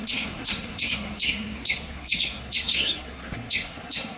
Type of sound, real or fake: fake